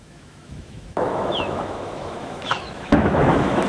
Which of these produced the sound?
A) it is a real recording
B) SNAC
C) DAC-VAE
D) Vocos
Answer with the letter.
C